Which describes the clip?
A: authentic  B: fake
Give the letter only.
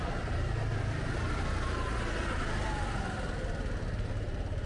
A